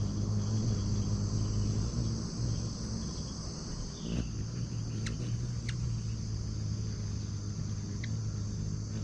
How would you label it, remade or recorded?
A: recorded